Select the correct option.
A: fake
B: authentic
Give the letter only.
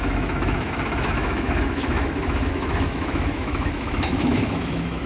A